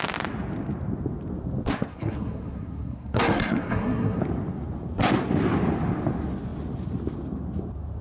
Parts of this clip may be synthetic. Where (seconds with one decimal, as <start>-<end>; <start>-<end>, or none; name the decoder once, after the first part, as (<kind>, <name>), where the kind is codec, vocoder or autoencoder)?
1.9-4.2 (codec, SNAC)